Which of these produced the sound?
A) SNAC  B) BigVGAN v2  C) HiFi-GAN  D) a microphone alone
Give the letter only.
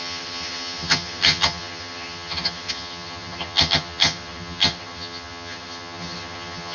C